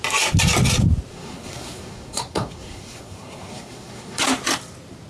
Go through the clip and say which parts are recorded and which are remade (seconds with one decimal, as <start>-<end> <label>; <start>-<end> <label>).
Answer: 0.0-1.1 recorded; 1.1-4.2 remade; 4.2-5.1 recorded